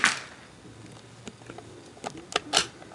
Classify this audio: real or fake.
real